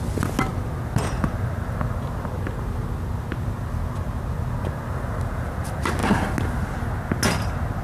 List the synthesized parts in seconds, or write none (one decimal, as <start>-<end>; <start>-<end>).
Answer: none